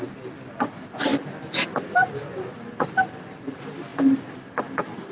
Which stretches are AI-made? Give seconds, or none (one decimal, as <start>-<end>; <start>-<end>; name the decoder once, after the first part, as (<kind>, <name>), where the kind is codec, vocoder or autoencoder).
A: none